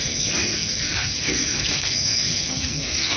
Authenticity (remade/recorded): remade